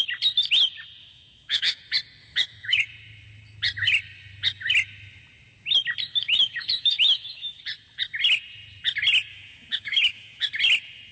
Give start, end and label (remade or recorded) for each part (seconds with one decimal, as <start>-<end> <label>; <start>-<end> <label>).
0.0-1.0 recorded; 1.0-1.8 remade; 1.8-2.2 recorded; 2.2-2.8 remade; 2.8-6.1 recorded; 6.1-7.6 remade; 7.6-9.3 recorded; 9.3-10.5 remade; 10.5-11.1 recorded